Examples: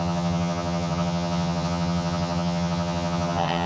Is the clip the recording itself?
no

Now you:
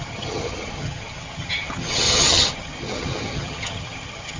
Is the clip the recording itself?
no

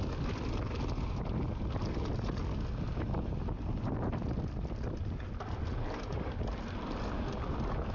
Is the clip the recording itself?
yes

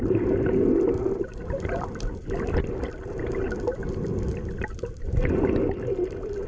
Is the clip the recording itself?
yes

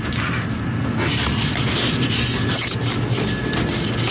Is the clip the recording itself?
yes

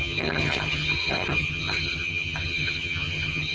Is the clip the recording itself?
no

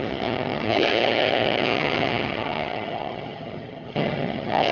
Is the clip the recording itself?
no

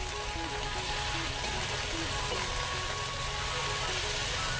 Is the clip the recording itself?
yes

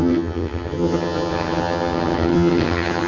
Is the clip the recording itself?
no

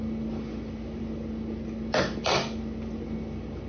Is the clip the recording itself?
yes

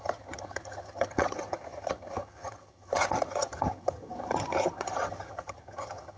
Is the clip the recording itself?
no